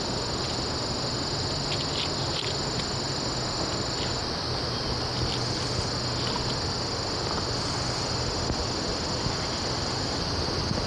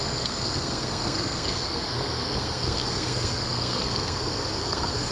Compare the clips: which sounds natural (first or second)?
first